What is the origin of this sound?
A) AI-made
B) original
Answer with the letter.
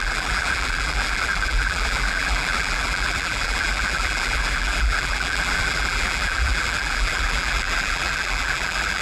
A